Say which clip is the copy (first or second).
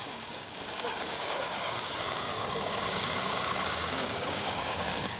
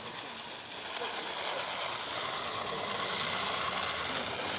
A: first